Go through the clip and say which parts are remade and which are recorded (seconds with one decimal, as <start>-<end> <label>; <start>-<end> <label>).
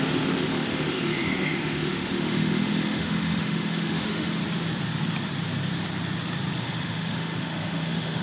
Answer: 0.0-4.4 remade; 4.4-6.6 recorded; 6.6-8.2 remade